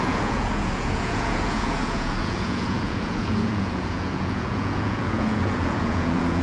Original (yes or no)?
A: no